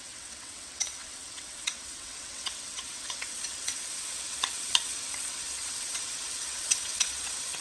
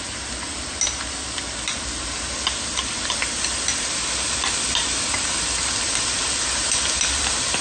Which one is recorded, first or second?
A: second